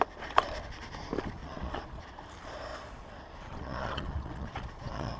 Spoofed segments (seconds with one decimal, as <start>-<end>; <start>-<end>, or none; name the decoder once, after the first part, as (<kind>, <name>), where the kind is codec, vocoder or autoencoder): 1.4-2.0 (vocoder, Vocos); 2.7-5.2